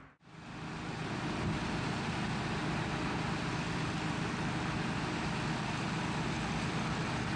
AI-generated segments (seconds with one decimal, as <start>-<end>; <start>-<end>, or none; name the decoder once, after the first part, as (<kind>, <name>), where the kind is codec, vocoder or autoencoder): none